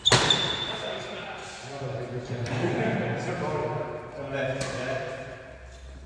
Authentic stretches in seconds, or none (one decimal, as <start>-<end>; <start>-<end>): 0.0-1.4; 2.0-6.1